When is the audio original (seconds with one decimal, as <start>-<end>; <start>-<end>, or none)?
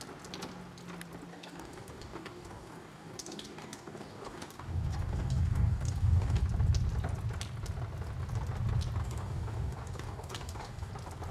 0.0-1.3; 6.4-9.0; 10.9-11.3